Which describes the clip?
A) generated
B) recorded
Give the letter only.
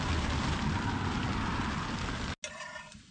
B